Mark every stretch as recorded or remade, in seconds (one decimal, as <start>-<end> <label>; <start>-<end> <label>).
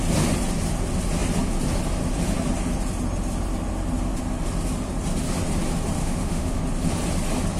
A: 0.0-6.0 recorded; 6.0-6.6 remade; 6.6-7.6 recorded